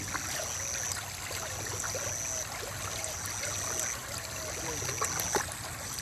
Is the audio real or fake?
real